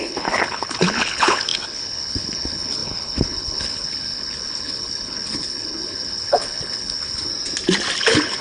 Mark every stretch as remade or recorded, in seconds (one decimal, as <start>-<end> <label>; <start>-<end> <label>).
0.0-7.3 remade; 7.3-8.0 recorded; 8.0-8.4 remade